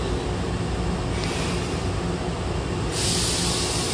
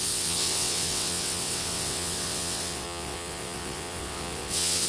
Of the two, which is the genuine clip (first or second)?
first